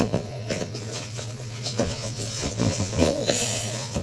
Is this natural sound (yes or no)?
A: no